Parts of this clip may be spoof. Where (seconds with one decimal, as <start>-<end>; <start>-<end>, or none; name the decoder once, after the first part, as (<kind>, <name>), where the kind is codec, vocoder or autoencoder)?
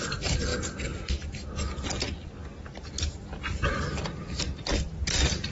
0.5-1.1 (vocoder, BigVGAN v2)